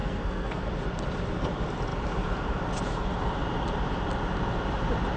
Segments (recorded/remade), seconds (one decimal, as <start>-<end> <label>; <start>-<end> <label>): 0.0-0.6 remade; 0.6-5.2 recorded